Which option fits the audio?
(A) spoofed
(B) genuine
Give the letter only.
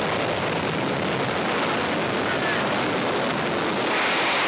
B